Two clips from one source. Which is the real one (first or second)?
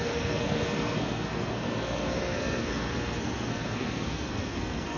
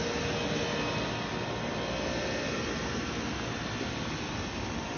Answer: second